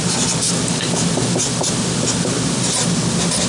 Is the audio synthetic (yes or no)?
no